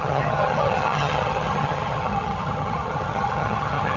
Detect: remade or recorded remade